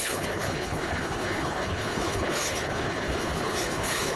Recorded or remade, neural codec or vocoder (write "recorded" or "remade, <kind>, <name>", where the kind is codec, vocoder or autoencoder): remade, codec, HILCodec